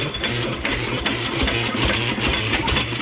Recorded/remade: recorded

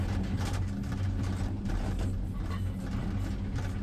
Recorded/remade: recorded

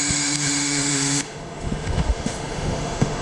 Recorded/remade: remade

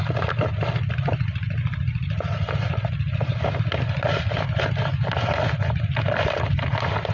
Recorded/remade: recorded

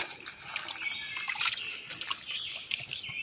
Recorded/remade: recorded